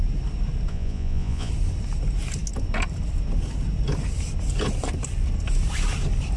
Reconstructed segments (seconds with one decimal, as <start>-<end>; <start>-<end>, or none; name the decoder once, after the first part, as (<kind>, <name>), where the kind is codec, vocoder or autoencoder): 0.7-1.5 (vocoder, Vocos)